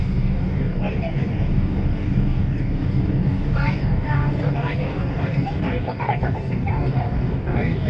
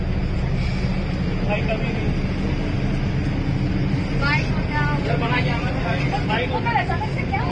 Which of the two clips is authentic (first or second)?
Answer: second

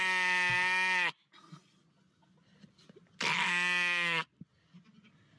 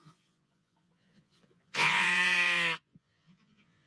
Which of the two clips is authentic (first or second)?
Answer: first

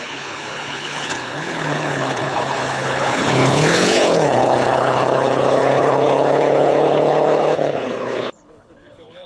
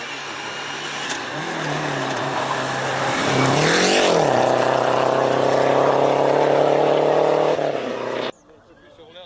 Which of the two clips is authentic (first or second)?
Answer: second